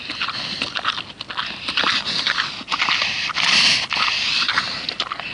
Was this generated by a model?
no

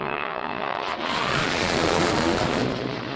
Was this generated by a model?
yes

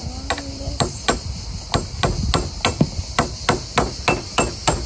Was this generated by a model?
no